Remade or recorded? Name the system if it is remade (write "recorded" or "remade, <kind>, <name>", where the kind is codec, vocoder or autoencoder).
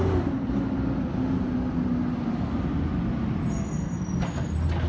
recorded